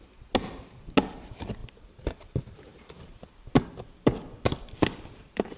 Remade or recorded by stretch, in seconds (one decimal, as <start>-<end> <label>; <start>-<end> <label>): 0.0-2.7 recorded; 2.7-5.6 remade